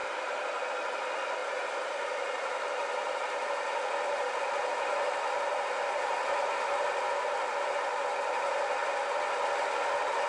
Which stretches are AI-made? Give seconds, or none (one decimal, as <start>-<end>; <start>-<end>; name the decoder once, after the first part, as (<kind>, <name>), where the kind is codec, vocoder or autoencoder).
0.0-0.7 (vocoder, BigVGAN v2)